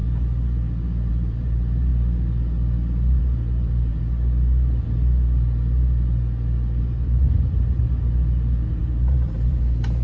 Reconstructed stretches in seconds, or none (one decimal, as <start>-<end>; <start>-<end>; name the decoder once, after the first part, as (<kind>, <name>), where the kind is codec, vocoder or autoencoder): 1.1-1.9 (vocoder, BigVGAN v2); 3.2-3.9; 6.8-7.8; 8.8-10.0